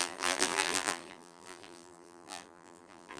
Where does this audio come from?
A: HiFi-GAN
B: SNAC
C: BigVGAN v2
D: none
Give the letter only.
C